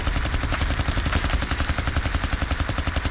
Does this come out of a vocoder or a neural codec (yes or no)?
yes